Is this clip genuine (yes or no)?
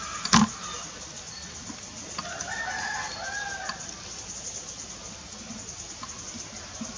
yes